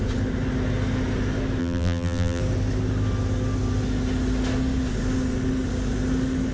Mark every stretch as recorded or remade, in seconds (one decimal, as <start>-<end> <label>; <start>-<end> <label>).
0.0-1.6 recorded; 1.6-2.4 remade; 2.4-6.5 recorded